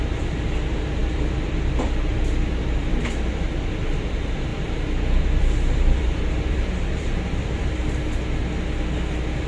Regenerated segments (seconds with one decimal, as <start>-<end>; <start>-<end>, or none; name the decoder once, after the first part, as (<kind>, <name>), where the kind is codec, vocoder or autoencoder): 1.0-3.0 (vocoder, BigVGAN v2); 4.5-7.6